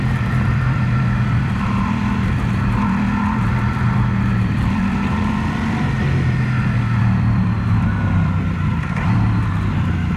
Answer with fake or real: fake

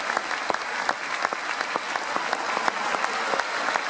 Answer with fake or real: real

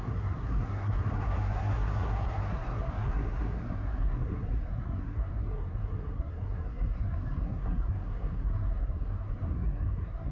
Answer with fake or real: fake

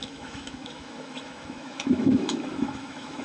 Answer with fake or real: fake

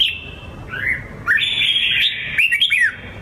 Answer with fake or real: real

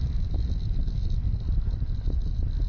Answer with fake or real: real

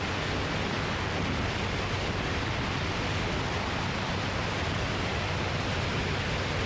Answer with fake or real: real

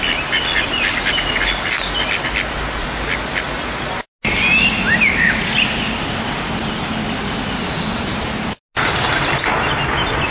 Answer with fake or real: real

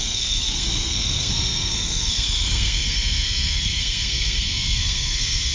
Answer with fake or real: fake